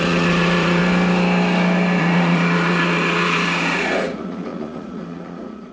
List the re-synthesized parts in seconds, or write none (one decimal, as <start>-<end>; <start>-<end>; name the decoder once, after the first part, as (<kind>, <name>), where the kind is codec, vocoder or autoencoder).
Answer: 0.0-0.8 (vocoder, Vocos); 2.0-5.7